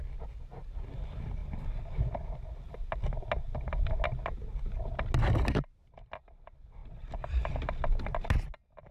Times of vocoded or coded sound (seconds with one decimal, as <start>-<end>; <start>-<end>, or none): none